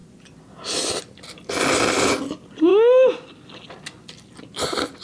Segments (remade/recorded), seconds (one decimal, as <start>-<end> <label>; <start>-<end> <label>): 0.0-5.0 recorded